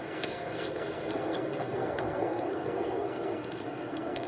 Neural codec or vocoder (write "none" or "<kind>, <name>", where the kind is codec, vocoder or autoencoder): codec, SNAC